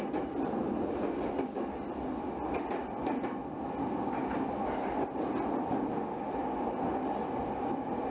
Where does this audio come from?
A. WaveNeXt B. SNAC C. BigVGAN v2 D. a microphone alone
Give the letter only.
D